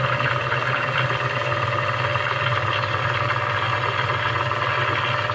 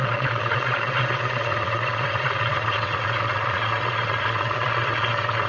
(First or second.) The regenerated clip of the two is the second